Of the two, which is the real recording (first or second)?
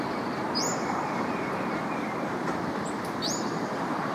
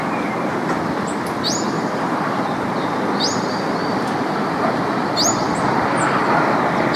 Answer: second